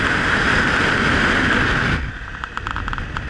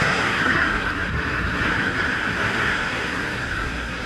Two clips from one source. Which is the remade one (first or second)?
second